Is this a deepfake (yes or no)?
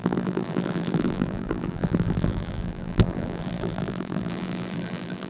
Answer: yes